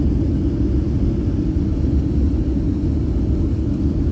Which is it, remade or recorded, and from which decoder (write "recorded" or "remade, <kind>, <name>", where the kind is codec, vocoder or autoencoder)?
recorded